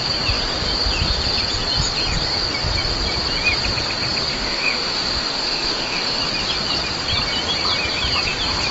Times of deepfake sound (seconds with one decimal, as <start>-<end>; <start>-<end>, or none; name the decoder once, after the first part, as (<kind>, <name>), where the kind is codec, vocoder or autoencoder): 4.3-6.2 (autoencoder, DAC-VAE)